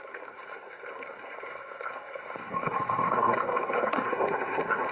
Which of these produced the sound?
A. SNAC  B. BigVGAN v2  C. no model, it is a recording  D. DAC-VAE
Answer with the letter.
A